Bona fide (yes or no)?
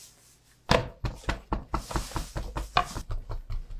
yes